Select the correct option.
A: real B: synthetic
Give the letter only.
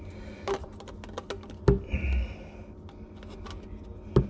A